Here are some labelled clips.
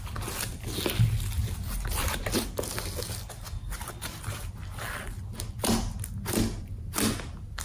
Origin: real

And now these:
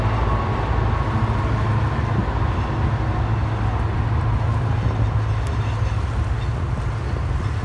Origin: real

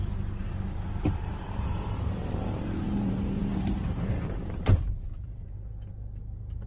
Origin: fake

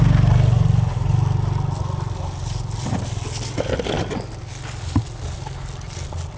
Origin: real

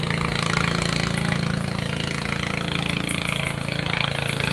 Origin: real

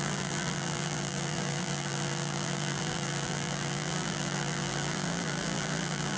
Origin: fake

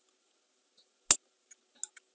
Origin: real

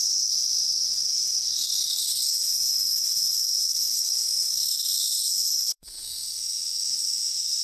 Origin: fake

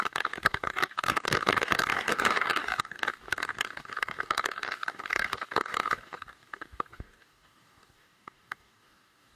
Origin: fake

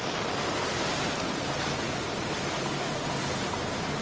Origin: real